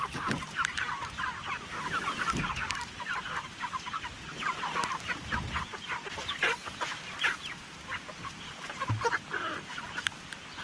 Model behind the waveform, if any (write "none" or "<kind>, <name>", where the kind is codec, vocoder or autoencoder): none